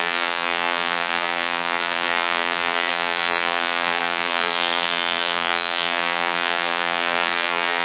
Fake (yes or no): yes